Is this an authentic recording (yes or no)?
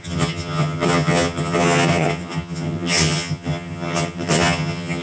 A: no